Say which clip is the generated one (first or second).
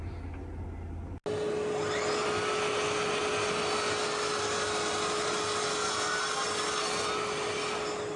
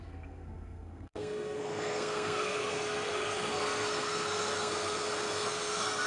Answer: second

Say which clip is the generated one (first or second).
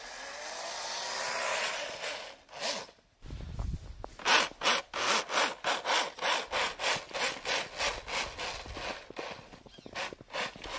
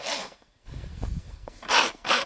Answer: second